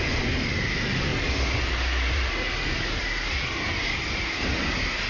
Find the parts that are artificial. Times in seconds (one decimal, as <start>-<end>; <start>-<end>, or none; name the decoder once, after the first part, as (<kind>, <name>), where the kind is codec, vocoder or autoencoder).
0.0-1.1 (vocoder, BigVGAN v2); 4.2-5.1